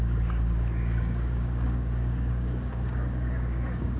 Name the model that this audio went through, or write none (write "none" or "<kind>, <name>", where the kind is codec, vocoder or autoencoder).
codec, DAC